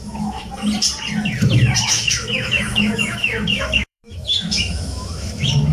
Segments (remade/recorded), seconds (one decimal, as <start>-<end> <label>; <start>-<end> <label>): 0.0-0.5 remade; 0.5-1.9 recorded; 1.9-5.7 remade